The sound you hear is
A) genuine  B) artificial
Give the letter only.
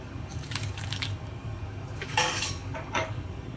B